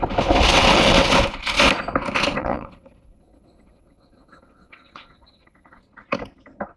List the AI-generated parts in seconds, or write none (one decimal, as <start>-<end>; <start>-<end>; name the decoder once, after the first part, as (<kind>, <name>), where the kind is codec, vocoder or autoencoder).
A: 0.5-1.1 (vocoder, WaveNeXt); 2.4-5.8